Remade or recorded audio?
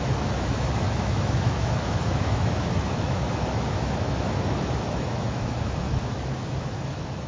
remade